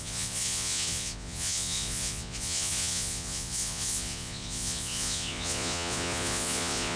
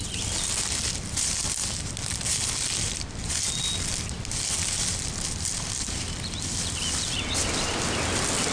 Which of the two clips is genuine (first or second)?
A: second